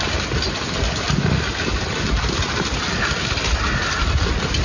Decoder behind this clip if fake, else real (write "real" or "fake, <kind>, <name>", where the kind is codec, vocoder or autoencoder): real